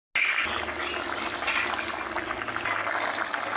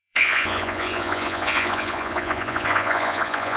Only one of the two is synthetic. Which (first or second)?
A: second